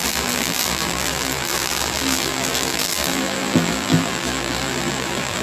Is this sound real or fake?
fake